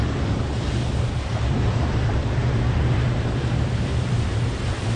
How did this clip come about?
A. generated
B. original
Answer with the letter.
A